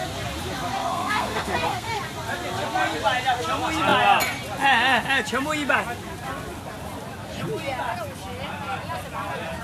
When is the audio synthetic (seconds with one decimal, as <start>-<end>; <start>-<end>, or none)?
0.8-2.0

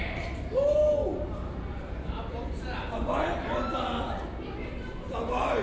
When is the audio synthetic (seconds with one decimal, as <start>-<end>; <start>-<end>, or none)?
none